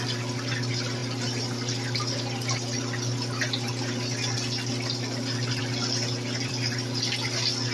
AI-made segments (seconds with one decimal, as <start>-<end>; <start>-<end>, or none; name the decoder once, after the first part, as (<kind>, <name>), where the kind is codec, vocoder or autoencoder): 0.0-7.7 (vocoder, BigVGAN v2)

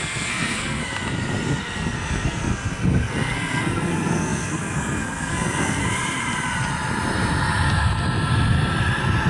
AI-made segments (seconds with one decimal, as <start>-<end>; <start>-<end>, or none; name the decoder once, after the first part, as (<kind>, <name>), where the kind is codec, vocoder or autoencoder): 0.0-0.8 (codec, SNAC); 1.6-5.8

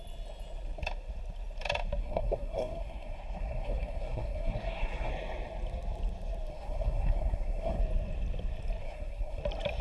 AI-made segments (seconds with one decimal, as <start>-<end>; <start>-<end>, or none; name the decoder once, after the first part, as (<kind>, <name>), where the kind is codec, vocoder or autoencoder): 2.0-5.1 (codec, SNAC); 6.5-7.8; 8.8-9.4